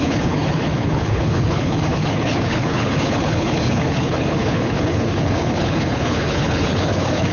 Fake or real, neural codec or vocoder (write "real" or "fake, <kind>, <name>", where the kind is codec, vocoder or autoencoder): fake, codec, HILCodec